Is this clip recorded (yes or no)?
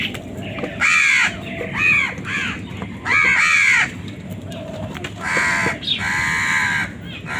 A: yes